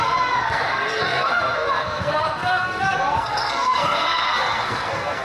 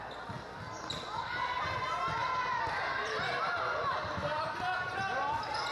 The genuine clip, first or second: second